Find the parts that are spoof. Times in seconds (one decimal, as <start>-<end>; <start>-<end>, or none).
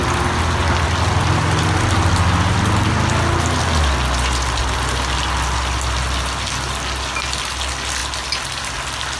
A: none